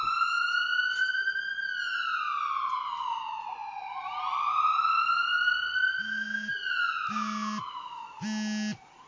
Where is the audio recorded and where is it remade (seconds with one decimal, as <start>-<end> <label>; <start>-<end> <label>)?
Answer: 0.0-9.1 recorded